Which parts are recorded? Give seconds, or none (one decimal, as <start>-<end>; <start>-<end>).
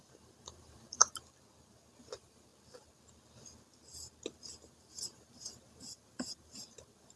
1.0-2.0; 2.5-4.7